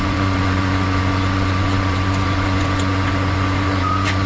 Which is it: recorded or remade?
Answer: remade